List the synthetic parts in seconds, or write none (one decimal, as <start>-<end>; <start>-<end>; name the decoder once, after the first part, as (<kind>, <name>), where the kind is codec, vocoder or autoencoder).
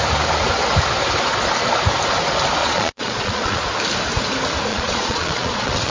2.6-3.7 (vocoder, Vocos); 4.7-5.9